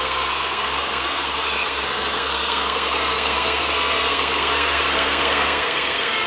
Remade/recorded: remade